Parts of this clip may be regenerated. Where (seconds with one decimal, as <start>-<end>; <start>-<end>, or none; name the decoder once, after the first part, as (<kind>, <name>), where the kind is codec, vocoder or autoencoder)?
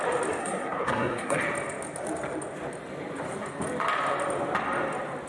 0.4-1.4 (codec, SNAC)